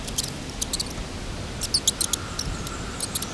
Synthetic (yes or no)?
no